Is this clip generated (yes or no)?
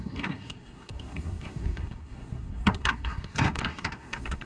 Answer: yes